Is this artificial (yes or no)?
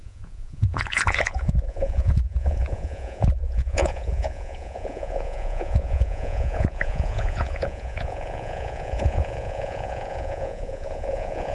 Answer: yes